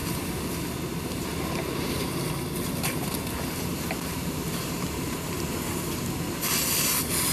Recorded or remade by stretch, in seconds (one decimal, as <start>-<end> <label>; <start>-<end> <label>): 0.0-3.7 recorded; 3.7-5.3 remade; 5.3-7.3 recorded